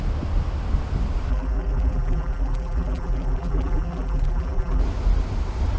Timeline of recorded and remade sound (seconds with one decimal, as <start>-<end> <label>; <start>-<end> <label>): 0.0-1.3 recorded; 1.3-4.8 remade; 4.8-5.8 recorded